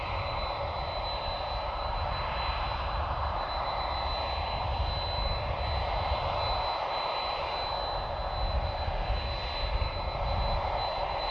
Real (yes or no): yes